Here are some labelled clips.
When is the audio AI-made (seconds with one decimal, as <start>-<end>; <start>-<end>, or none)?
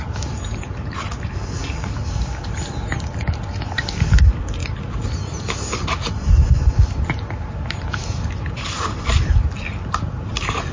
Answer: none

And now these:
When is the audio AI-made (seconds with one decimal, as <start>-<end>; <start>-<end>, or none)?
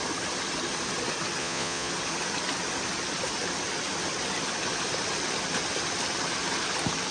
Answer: 1.4-1.9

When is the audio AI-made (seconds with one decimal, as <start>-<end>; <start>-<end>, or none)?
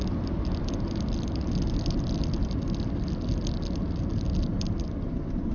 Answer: none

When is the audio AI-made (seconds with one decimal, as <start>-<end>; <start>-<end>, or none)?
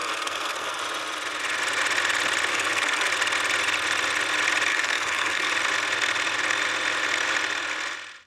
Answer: 0.0-0.8; 2.5-3.1; 4.7-5.5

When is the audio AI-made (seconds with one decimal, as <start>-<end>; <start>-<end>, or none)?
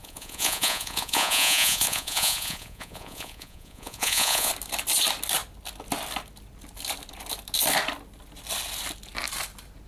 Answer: 0.0-4.5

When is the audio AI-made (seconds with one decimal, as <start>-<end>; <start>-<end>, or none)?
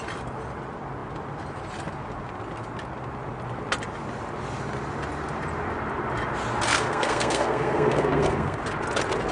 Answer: 6.7-8.6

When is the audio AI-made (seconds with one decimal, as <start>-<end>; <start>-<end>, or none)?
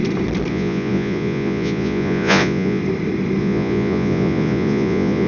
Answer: 0.5-2.8; 3.4-5.3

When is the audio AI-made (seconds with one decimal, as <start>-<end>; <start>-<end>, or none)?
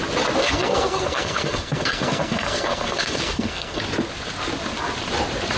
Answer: 0.4-3.8